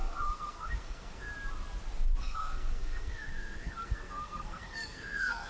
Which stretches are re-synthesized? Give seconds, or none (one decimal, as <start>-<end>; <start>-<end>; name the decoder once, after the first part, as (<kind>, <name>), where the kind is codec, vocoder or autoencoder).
0.0-1.3 (codec, SNAC); 2.2-5.5